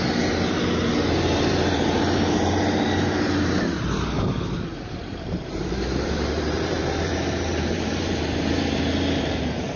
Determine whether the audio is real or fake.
fake